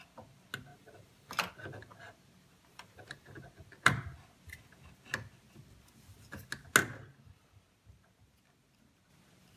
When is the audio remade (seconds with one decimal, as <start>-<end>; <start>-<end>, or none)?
0.7-1.5; 2.7-3.4